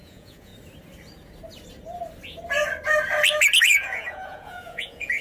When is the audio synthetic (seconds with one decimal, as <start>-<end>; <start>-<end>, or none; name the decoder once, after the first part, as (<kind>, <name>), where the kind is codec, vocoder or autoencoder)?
0.0-0.5 (vocoder, Vocos); 3.6-5.2